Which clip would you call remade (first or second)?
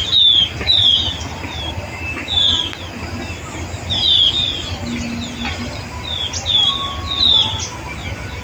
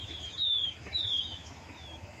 second